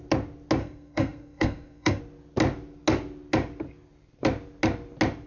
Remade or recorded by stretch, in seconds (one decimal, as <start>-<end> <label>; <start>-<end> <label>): 0.0-0.6 recorded; 0.6-2.0 remade; 2.0-5.3 recorded